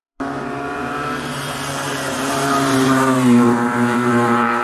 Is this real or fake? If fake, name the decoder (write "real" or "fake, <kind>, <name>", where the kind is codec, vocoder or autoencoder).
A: fake, vocoder, BigVGAN v2